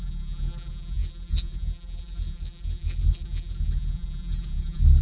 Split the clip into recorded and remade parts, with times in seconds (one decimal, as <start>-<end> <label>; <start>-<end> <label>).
0.0-5.0 remade